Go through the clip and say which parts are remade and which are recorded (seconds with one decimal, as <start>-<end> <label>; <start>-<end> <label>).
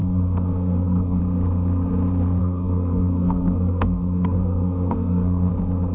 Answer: 0.0-1.2 remade; 1.2-2.4 recorded; 2.4-5.5 remade; 5.5-5.9 recorded